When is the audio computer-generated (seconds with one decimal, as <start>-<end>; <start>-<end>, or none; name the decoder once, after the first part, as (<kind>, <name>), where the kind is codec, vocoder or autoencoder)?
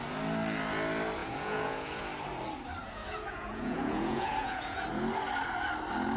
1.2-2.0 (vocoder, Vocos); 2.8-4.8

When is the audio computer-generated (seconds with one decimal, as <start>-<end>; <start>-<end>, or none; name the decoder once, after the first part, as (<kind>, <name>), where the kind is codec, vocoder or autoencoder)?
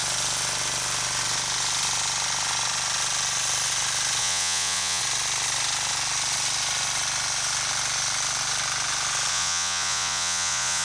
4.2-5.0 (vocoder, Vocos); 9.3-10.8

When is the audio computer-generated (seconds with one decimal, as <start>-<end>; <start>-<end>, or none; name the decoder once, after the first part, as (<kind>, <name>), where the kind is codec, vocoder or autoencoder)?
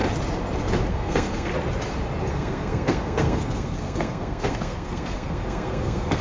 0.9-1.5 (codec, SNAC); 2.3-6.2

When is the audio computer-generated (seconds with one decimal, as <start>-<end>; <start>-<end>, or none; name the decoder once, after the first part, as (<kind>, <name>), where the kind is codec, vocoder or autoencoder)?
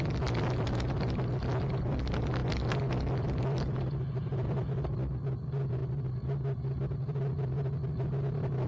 none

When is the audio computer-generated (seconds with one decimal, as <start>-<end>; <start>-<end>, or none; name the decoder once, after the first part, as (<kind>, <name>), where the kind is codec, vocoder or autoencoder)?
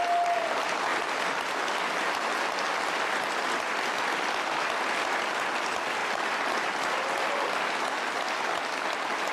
none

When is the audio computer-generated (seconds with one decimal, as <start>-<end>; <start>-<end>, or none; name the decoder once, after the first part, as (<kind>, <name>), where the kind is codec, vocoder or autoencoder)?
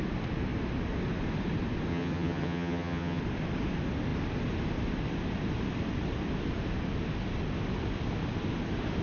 1.9-3.2 (vocoder, HiFi-GAN)